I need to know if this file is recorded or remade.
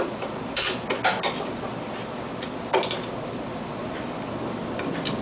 remade